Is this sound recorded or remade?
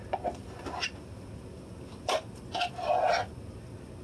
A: recorded